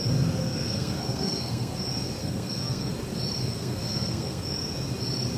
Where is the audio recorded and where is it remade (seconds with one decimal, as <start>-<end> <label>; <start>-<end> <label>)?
0.0-0.4 recorded; 0.4-1.7 remade; 1.7-2.2 recorded; 2.2-2.9 remade; 2.9-3.4 recorded; 3.4-4.4 remade; 4.4-5.4 recorded